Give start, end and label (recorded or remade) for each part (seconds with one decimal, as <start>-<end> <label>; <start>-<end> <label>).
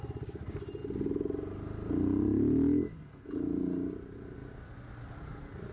0.0-5.7 recorded